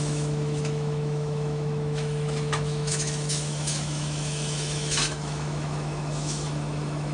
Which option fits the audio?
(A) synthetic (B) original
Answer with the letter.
A